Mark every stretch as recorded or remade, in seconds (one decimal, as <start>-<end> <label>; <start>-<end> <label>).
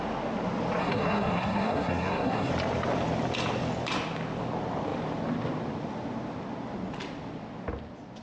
0.0-0.8 recorded; 0.8-2.5 remade; 2.5-8.2 recorded